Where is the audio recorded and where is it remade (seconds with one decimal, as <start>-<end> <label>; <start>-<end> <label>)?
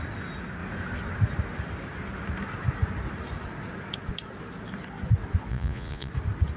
0.0-5.5 recorded; 5.5-6.1 remade; 6.1-6.6 recorded